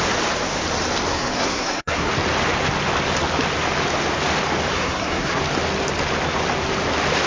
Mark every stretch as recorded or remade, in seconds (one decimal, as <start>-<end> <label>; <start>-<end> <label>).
0.0-1.1 recorded; 1.1-2.1 remade; 2.1-4.7 recorded; 4.7-5.4 remade; 5.4-7.3 recorded